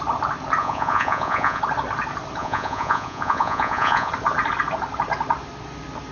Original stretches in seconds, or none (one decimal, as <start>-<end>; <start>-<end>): 0.0-0.6; 1.6-2.4; 4.1-6.1